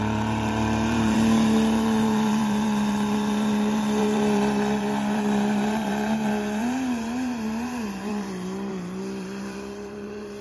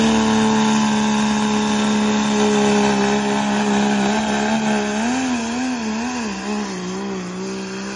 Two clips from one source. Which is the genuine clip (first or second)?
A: second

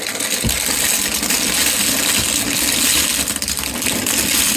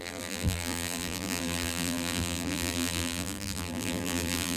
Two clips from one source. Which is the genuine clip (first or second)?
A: first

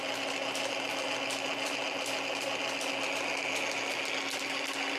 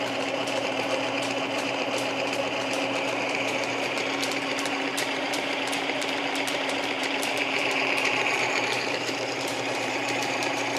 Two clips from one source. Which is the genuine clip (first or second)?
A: first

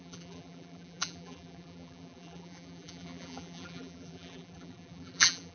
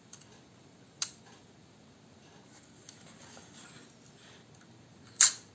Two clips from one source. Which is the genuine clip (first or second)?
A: second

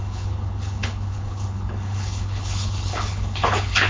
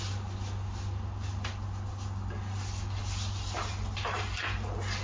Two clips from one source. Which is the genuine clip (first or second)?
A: second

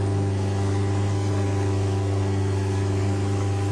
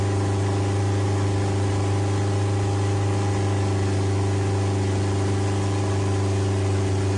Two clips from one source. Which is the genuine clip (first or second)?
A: second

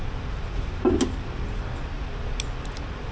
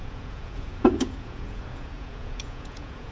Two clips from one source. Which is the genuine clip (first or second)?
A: first